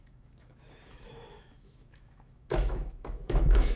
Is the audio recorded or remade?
remade